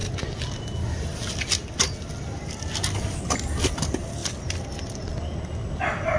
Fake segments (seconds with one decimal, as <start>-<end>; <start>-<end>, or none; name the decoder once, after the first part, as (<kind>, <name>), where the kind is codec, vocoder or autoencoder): 4.2-6.2 (vocoder, BigVGAN v2)